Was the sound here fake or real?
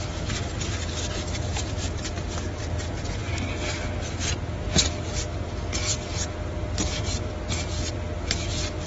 real